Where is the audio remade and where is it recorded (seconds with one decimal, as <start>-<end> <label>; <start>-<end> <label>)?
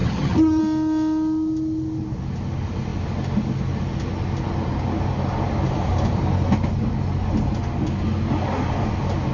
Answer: 0.0-0.6 remade; 0.6-9.3 recorded